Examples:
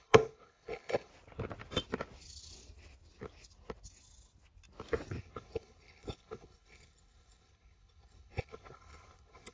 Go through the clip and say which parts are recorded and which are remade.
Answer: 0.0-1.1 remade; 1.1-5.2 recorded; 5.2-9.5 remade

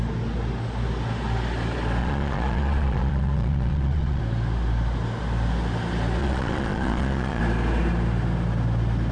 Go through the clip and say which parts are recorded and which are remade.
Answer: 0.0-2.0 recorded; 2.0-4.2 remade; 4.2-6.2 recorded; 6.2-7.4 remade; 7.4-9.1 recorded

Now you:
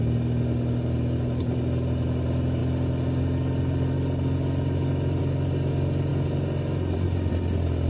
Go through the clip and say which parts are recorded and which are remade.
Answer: 0.0-7.9 recorded

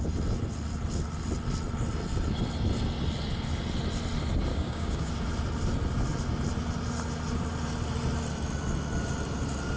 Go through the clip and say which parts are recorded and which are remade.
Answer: 0.0-4.5 recorded; 4.5-5.1 remade; 5.1-9.8 recorded

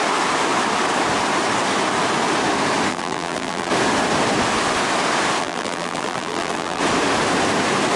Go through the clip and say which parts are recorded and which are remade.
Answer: 0.0-2.9 recorded; 2.9-3.7 remade; 3.7-5.4 recorded; 5.4-6.8 remade; 6.8-8.0 recorded